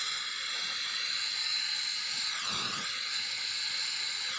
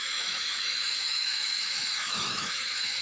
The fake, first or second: second